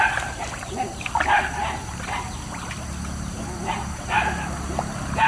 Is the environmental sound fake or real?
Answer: real